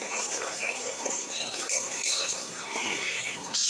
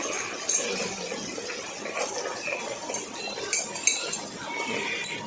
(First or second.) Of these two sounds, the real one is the second